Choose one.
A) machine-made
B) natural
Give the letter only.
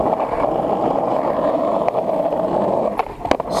B